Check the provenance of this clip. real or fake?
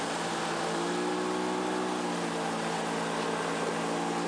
real